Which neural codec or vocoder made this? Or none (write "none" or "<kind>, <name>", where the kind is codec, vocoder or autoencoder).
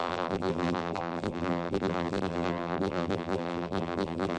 vocoder, BigVGAN v2